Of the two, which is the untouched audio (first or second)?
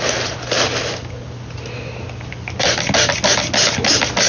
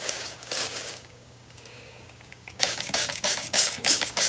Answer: first